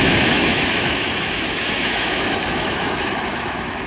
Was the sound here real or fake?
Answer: fake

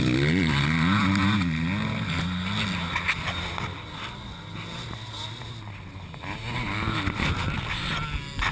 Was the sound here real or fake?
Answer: real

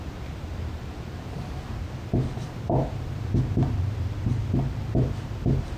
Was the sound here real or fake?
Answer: fake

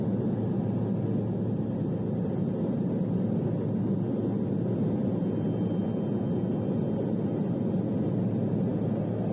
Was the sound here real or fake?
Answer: real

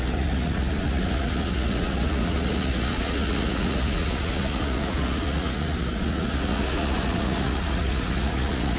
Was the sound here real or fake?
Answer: fake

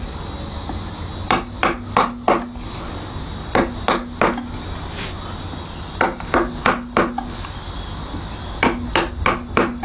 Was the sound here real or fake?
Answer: real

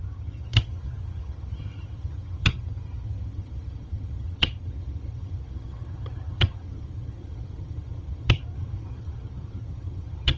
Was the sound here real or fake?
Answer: fake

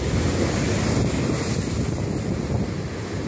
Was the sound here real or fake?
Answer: real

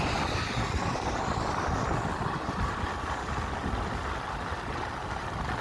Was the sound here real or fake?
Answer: real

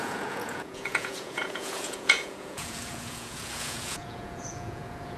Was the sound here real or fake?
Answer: fake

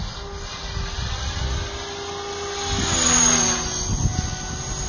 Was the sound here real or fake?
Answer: real